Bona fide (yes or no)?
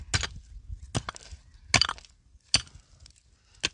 yes